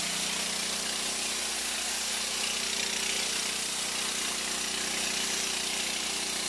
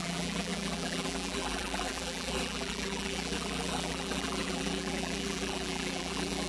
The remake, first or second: second